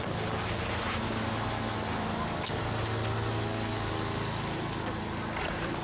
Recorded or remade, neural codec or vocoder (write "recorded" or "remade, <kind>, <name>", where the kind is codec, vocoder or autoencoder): recorded